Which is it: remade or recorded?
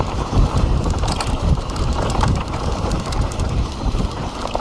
remade